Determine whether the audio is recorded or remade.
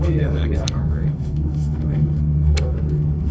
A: remade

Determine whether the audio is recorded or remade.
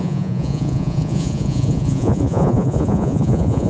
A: remade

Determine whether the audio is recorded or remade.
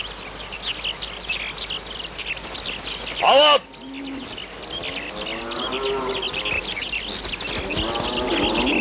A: recorded